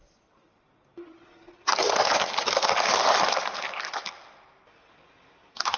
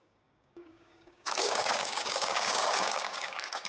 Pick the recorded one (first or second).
first